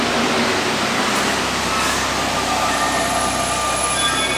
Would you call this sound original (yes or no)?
yes